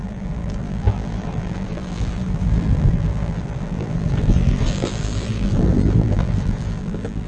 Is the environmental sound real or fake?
fake